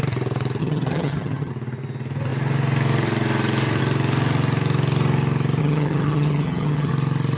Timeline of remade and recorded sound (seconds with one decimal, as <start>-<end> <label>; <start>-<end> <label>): 0.0-0.6 recorded; 0.6-1.5 remade; 1.5-5.6 recorded; 5.6-6.9 remade; 6.9-7.4 recorded